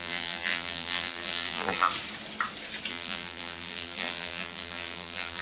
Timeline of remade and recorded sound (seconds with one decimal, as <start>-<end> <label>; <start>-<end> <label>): 0.0-1.9 remade; 1.9-2.9 recorded; 2.9-5.4 remade